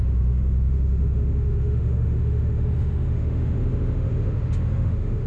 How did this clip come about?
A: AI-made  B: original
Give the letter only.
A